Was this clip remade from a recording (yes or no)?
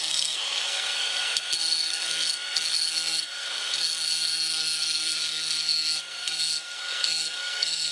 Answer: yes